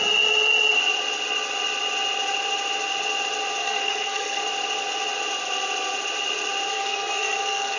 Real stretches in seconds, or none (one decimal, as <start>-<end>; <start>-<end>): 0.0-3.6; 4.4-6.7